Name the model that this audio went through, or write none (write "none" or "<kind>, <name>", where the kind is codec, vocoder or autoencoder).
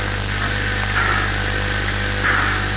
none